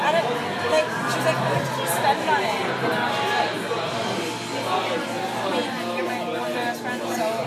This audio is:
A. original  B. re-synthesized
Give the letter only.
A